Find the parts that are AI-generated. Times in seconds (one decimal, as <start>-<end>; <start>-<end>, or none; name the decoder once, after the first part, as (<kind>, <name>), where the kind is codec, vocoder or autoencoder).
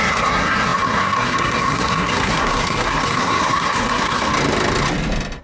0.0-4.3 (codec, SNAC)